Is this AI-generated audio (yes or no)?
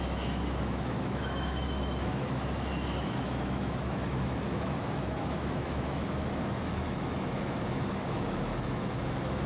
yes